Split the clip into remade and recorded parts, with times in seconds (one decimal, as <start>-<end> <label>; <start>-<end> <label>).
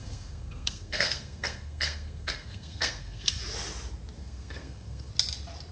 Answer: 0.0-3.4 remade; 3.4-4.2 recorded; 4.2-5.1 remade; 5.1-5.7 recorded